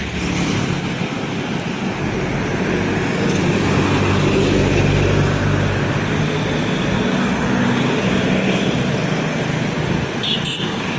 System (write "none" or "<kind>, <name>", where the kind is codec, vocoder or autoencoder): none